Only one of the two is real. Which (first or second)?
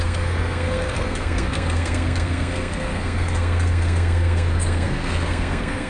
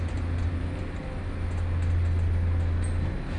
second